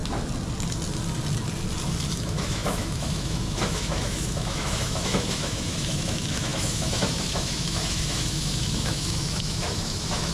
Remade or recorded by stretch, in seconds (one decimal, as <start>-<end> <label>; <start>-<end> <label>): 0.0-2.2 recorded; 2.2-10.3 remade